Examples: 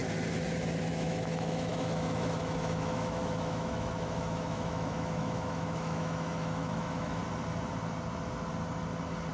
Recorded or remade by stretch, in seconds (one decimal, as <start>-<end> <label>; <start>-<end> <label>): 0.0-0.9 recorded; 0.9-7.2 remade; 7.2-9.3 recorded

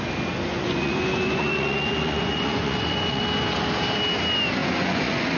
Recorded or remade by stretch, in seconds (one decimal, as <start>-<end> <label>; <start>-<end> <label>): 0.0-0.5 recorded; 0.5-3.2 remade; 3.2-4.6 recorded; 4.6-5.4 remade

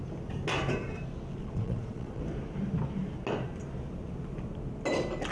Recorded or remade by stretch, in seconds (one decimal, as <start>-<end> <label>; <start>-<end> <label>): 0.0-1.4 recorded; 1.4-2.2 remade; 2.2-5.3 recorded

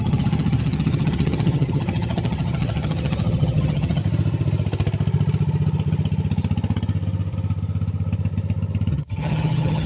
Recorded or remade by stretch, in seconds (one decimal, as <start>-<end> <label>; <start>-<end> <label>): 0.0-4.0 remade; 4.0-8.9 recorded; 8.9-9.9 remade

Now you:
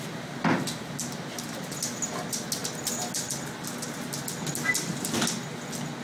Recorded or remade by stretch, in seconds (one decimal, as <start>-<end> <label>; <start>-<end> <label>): 0.0-6.0 recorded